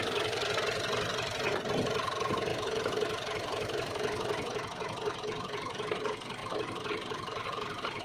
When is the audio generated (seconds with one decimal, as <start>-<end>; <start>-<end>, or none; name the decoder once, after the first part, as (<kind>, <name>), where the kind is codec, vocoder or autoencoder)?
2.5-5.2 (vocoder, BigVGAN v2); 6.4-8.0